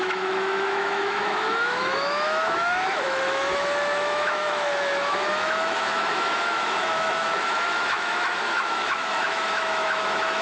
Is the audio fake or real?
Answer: fake